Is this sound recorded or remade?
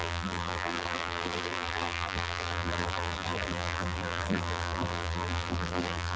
remade